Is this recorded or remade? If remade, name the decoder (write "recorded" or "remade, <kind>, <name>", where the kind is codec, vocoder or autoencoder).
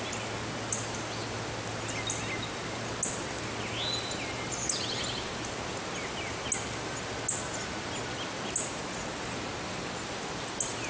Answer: recorded